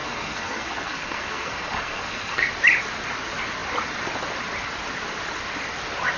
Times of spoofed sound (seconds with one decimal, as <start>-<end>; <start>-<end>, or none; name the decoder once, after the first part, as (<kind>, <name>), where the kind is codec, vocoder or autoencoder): 0.0-2.5 (codec, SNAC)